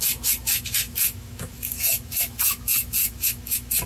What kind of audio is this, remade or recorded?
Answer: remade